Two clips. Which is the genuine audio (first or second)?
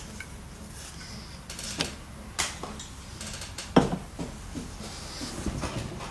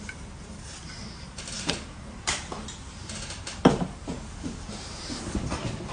first